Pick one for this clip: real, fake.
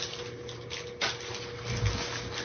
real